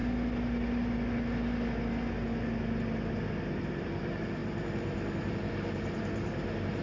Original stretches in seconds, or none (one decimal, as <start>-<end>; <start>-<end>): 0.0-3.7